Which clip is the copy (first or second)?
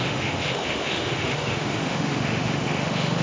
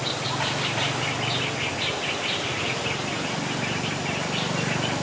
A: first